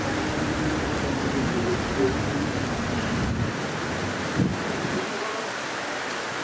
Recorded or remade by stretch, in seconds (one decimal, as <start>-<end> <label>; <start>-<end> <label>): 0.0-6.4 recorded